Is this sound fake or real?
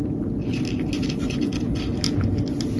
real